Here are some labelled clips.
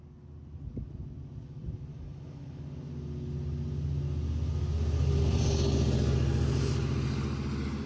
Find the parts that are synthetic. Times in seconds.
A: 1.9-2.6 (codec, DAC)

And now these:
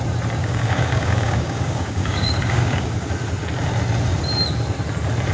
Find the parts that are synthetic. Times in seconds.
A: 0.4-3.1 (codec, DAC)

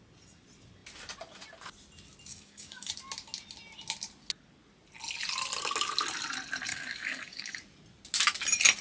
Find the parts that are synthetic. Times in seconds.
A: 2.3-2.9 (codec, DAC); 6.7-7.6

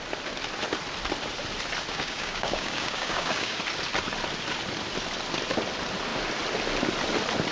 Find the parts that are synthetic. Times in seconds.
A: 1.9-3.6 (codec, DAC)

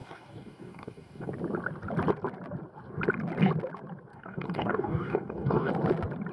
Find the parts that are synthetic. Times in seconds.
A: 0.0-1.3 (codec, DAC); 4.1-5.7

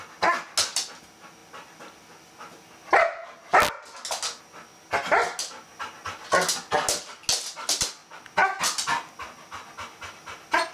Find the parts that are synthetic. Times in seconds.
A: none